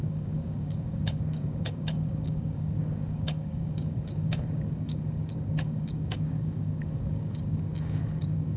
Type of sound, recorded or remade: remade